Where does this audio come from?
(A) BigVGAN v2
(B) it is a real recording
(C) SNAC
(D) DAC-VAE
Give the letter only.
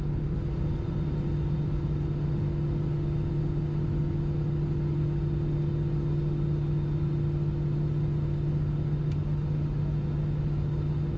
B